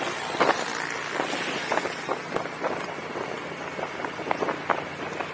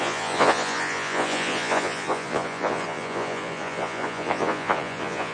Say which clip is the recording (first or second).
first